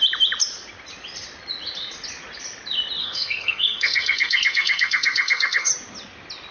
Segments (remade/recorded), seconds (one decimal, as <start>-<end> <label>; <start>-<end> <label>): 0.0-3.0 recorded; 3.0-5.7 remade; 5.7-6.5 recorded